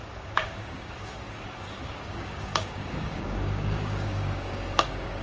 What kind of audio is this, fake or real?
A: fake